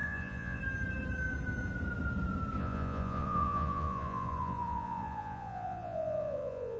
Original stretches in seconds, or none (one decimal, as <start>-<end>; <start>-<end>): 0.6-2.6